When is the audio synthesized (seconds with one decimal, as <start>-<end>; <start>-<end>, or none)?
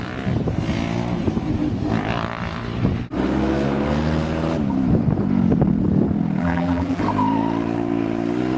6.4-7.0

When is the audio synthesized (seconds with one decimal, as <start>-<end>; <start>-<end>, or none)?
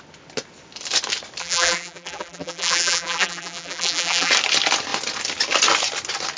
1.4-4.3